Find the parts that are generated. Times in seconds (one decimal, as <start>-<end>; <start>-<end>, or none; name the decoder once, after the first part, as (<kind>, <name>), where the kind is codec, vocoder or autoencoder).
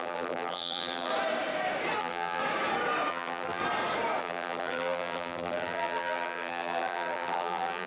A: 0.0-1.1 (vocoder, BigVGAN v2); 2.0-2.4; 3.1-3.6; 4.2-7.9